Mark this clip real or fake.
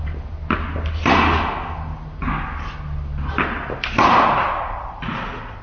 real